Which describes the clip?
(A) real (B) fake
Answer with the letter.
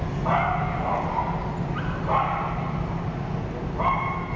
A